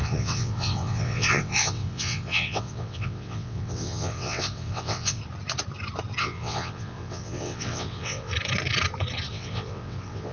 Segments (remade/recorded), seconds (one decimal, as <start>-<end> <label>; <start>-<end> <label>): 0.0-5.2 remade; 5.2-6.2 recorded; 6.2-8.3 remade; 8.3-9.3 recorded; 9.3-10.3 remade